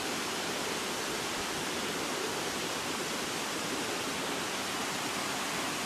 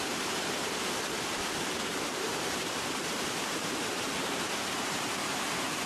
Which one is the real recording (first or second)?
first